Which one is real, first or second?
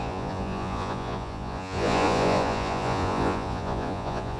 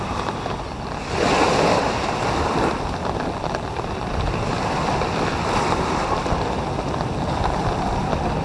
second